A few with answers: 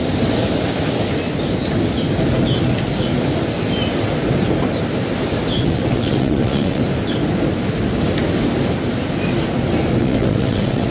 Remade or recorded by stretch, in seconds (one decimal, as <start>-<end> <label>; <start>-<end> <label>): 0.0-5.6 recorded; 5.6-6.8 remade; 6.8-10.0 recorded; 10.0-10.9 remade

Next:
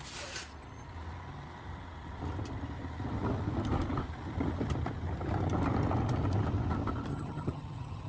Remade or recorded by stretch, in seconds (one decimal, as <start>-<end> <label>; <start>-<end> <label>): 0.0-7.1 recorded; 7.1-8.1 remade

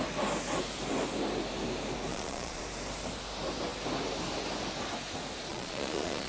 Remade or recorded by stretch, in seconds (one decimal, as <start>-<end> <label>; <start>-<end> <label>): 0.0-2.1 recorded; 2.1-2.6 remade; 2.6-5.5 recorded; 5.5-6.3 remade

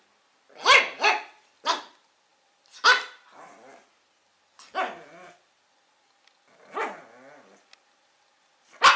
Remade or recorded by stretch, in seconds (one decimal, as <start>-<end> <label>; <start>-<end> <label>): 0.0-9.0 recorded